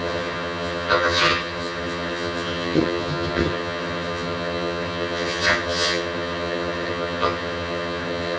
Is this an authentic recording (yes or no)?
no